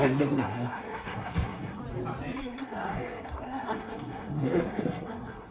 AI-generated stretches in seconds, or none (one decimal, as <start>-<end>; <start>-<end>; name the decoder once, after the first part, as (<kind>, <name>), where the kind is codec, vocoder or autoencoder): 0.0-1.8 (codec, SNAC); 2.4-5.5

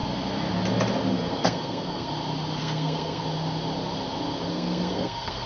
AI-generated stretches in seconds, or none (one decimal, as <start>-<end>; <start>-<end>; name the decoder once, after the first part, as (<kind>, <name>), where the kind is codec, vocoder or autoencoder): 1.1-2.1 (codec, SNAC); 2.6-3.2; 4.5-5.5

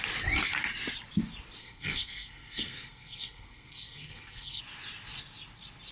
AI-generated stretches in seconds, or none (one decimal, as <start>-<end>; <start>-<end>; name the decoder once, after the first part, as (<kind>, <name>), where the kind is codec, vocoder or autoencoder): 1.6-4.6 (codec, SNAC)

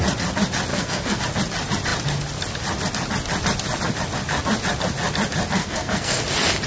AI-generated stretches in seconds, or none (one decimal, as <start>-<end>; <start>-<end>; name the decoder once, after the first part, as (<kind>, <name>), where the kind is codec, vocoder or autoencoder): 0.7-1.2 (codec, SNAC); 5.6-6.2

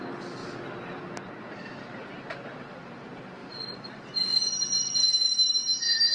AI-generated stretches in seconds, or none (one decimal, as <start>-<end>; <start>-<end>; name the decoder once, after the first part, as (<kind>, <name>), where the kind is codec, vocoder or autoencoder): none